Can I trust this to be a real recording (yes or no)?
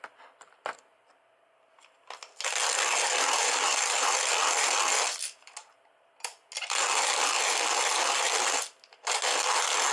yes